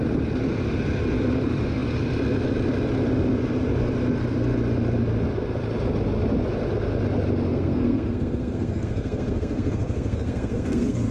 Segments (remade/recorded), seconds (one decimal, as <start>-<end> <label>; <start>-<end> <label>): 0.0-7.5 recorded; 7.5-11.1 remade